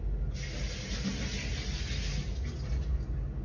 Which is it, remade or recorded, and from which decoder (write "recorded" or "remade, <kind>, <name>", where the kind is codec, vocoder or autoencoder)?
recorded